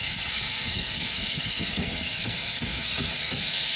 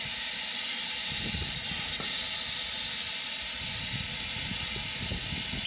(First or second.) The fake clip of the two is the first